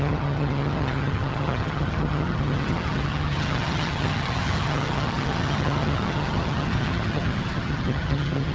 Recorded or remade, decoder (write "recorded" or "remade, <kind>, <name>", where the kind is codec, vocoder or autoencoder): remade, vocoder, HiFi-GAN